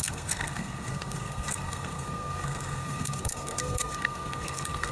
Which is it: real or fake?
fake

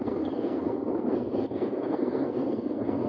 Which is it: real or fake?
fake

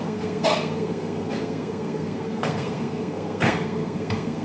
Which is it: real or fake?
fake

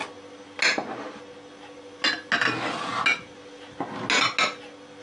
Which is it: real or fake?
real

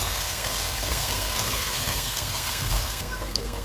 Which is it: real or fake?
fake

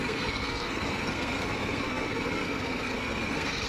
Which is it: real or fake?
fake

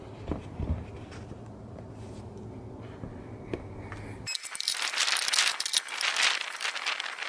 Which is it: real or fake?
real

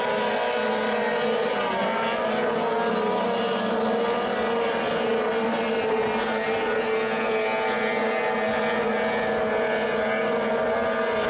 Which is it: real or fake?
real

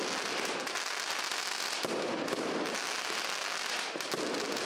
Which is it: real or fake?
real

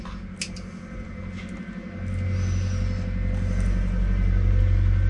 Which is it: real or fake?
real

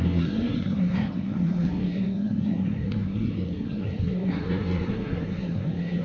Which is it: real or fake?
fake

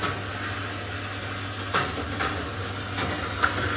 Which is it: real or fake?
real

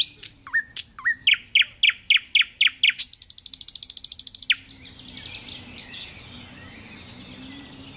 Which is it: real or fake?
real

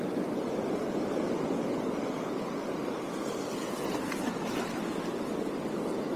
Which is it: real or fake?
real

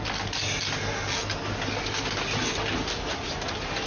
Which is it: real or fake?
real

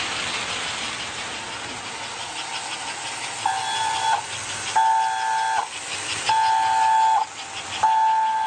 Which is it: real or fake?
real